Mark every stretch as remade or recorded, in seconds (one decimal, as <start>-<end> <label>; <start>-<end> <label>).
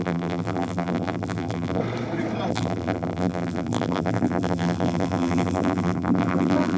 0.0-1.8 remade; 1.8-2.5 recorded; 2.5-6.8 remade